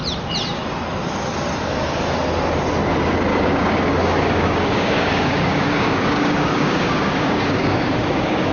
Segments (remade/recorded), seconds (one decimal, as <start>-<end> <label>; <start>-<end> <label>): 0.0-3.3 recorded; 3.3-8.5 remade